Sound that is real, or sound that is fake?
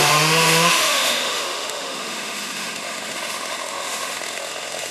fake